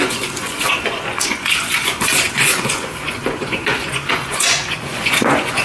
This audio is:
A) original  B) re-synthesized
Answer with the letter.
B